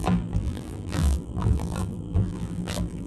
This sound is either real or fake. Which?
fake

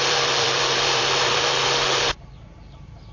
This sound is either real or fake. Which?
fake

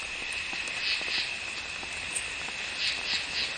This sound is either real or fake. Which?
real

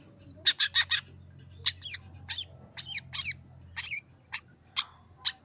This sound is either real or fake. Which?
real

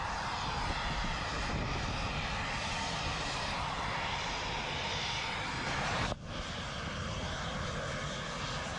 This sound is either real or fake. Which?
real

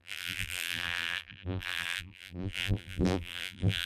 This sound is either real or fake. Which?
fake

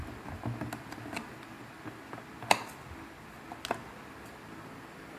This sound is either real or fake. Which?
real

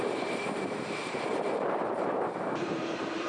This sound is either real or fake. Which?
fake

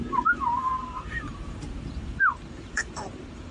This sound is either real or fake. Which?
fake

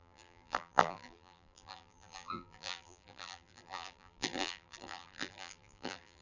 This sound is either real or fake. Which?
fake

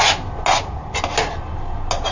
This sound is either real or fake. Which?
real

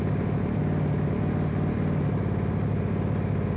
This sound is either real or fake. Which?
real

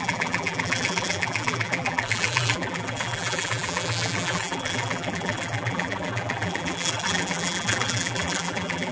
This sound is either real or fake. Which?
fake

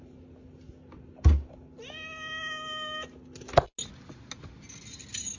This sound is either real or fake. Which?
real